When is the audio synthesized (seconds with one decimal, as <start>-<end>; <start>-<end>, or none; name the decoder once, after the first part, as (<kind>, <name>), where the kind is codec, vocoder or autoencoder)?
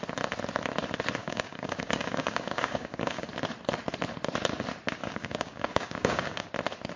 1.2-3.3 (codec, DAC); 5.0-6.5